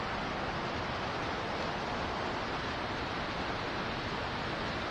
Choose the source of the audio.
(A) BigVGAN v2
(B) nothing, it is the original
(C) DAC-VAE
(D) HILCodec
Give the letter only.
B